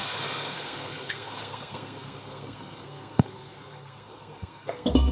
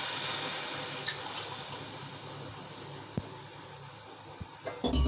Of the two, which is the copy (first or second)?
first